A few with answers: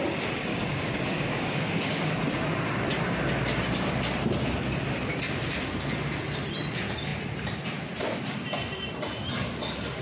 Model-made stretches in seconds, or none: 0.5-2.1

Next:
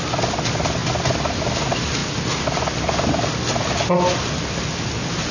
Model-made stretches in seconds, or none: none

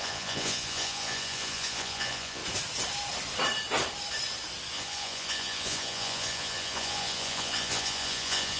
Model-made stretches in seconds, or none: 0.0-2.4; 4.7-8.6

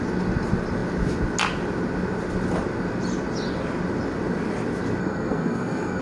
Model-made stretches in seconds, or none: 5.0-6.0